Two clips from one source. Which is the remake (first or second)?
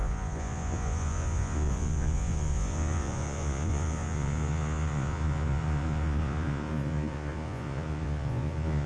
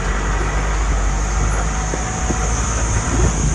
first